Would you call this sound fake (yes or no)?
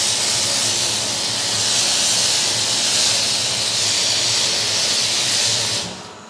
no